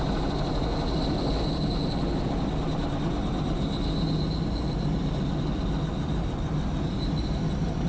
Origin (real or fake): real